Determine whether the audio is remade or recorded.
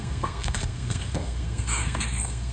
remade